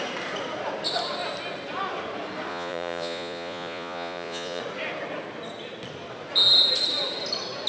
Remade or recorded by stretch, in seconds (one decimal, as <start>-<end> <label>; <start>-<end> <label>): 0.0-2.5 recorded; 2.5-4.6 remade; 4.6-7.7 recorded